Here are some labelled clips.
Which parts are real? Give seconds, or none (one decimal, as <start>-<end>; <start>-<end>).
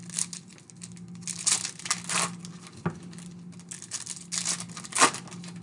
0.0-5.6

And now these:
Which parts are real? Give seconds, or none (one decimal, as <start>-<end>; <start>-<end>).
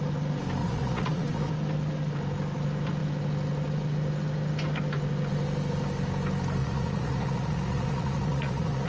0.0-0.6; 1.5-6.6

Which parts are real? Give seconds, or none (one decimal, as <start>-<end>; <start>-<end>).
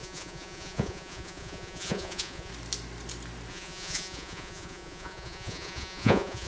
2.5-3.5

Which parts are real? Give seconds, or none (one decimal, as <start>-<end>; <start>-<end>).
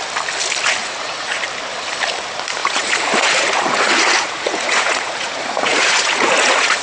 0.0-0.8; 1.4-2.6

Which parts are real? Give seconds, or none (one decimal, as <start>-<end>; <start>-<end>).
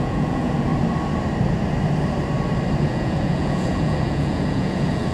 0.7-2.8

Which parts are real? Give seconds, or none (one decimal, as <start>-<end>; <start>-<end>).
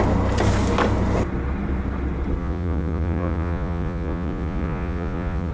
0.0-2.4